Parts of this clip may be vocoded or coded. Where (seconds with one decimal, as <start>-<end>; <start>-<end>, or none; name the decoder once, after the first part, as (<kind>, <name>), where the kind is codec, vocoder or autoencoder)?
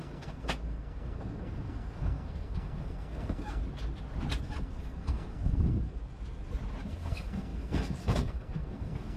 0.0-3.6 (codec, SNAC); 4.4-6.0; 6.9-9.2